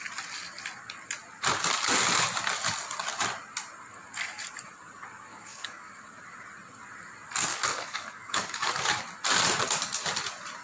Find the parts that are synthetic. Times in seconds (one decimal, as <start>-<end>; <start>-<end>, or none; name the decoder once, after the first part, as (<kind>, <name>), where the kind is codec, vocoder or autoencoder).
5.3-5.9 (codec, DAC); 7.5-9.0